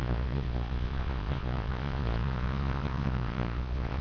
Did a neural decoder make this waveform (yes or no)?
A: yes